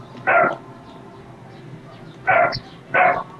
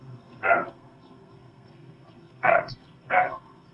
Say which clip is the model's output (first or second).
second